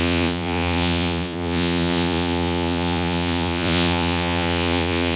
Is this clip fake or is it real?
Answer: fake